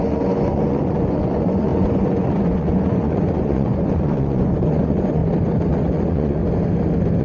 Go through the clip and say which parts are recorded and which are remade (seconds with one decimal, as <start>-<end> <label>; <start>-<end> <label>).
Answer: 0.0-5.2 remade; 5.2-5.7 recorded; 5.7-6.4 remade; 6.4-7.2 recorded